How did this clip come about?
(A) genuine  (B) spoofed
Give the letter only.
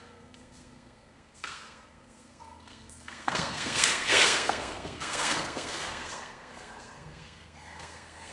B